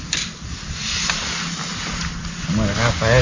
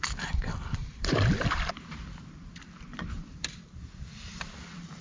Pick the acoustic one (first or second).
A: first